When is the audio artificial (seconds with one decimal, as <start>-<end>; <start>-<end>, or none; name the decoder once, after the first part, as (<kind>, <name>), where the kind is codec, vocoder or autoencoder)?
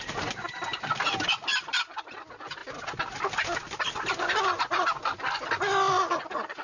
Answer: none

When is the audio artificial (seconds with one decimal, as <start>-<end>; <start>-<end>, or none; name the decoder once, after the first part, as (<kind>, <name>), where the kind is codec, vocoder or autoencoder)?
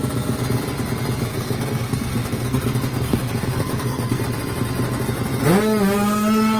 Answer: 1.3-4.2 (codec, SNAC)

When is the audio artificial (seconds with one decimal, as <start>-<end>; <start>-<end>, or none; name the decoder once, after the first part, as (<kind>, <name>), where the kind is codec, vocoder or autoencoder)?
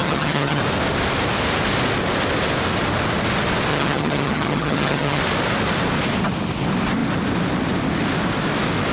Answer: 0.0-0.6 (vocoder, HiFi-GAN); 3.7-5.2